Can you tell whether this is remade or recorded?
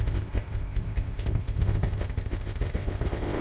remade